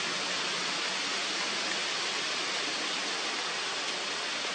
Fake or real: real